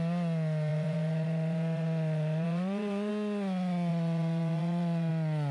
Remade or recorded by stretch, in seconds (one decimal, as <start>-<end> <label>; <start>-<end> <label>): 0.0-0.7 recorded; 0.7-3.1 remade; 3.1-3.9 recorded; 3.9-5.1 remade; 5.1-5.5 recorded